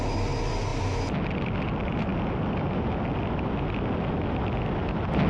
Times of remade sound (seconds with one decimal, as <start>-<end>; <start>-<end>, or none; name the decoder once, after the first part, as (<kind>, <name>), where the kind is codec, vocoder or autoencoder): none